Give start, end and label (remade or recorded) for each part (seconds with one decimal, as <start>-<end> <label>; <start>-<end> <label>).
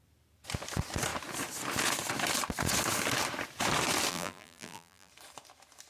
0.0-4.1 recorded; 4.1-5.1 remade; 5.1-5.9 recorded